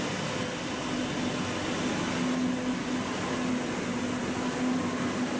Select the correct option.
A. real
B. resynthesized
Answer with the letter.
A